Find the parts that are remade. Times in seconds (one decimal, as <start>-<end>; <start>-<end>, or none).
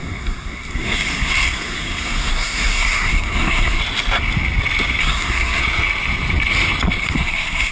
0.0-3.8; 5.0-5.6; 7.0-7.7